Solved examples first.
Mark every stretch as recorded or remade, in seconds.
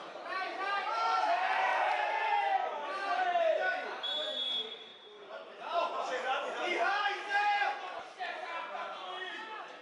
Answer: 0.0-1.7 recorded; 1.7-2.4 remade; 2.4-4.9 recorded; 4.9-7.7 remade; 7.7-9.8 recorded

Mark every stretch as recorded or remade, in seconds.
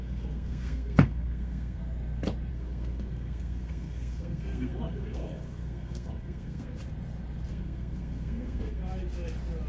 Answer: 0.0-1.8 remade; 1.8-2.5 recorded; 2.5-6.8 remade; 6.8-7.5 recorded; 7.5-8.8 remade; 8.8-9.7 recorded